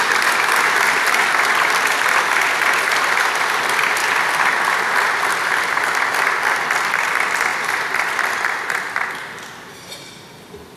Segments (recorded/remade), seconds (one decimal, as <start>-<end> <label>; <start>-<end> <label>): 0.0-7.5 recorded; 7.5-9.1 remade; 9.1-10.8 recorded